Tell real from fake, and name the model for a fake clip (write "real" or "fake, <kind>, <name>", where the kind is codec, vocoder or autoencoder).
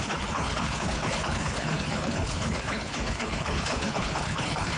fake, codec, HILCodec